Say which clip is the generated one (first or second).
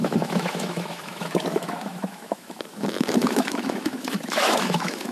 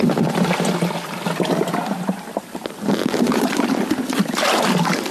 first